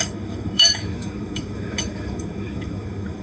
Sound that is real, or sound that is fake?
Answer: fake